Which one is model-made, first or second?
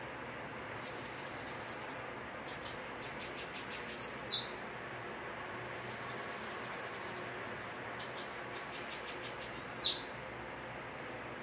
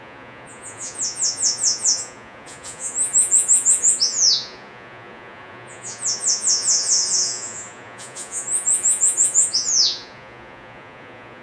second